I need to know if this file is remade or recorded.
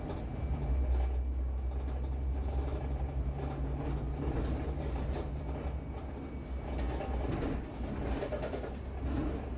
recorded